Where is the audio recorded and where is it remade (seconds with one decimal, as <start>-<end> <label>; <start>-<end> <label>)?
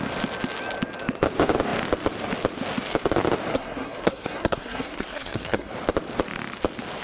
0.0-3.5 recorded; 3.5-5.7 remade; 5.7-7.0 recorded